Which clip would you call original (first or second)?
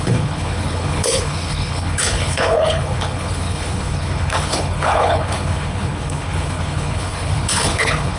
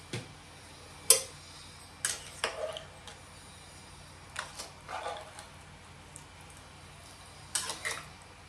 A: second